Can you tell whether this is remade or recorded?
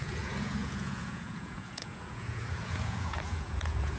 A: remade